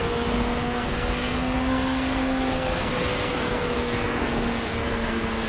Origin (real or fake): fake